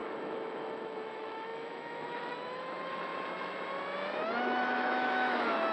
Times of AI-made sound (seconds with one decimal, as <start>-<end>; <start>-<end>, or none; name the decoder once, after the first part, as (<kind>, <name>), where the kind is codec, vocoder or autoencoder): 0.0-3.1 (autoencoder, DAC-VAE); 4.4-5.7

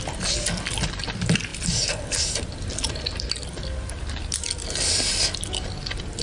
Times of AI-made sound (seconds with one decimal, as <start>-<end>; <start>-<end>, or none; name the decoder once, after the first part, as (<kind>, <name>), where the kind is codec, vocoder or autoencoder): none

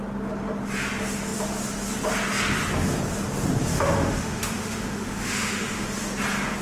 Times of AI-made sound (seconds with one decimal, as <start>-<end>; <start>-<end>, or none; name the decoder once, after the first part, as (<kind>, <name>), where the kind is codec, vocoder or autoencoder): 3.7-5.9 (autoencoder, DAC-VAE)

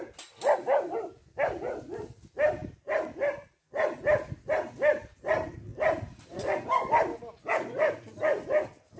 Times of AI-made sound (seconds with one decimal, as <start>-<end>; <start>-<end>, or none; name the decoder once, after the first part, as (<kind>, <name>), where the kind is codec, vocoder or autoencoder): none

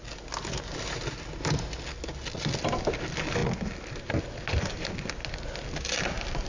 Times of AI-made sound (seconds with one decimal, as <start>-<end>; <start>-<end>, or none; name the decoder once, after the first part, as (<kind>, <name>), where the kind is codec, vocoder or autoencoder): none

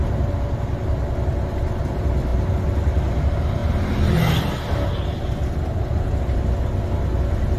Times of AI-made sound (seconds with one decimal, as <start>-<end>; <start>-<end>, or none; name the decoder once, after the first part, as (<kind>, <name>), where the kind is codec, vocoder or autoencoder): none